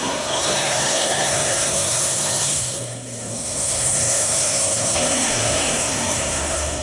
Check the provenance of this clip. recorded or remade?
remade